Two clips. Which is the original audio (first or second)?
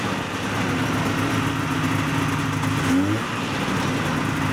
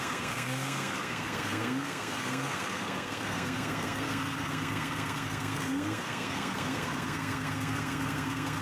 first